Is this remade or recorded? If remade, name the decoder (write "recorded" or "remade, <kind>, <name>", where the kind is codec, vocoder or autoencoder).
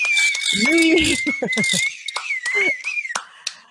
recorded